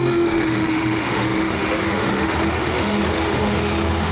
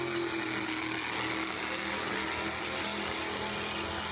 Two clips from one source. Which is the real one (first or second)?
second